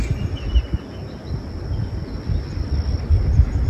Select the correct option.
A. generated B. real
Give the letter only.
B